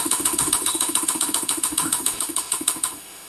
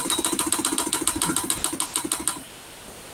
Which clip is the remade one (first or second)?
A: first